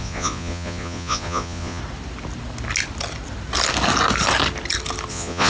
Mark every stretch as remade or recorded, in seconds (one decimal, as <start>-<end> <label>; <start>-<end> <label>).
0.0-1.8 remade; 1.8-5.1 recorded; 5.1-5.5 remade